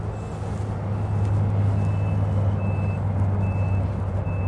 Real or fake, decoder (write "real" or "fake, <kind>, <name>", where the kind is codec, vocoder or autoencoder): real